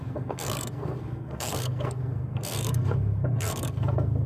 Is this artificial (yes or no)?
yes